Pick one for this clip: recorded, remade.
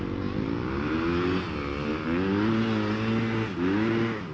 recorded